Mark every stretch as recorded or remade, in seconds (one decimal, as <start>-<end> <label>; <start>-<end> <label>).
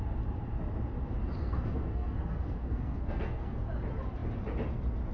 0.0-1.4 recorded; 1.4-3.6 remade; 3.6-5.1 recorded